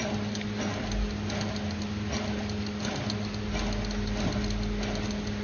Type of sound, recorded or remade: recorded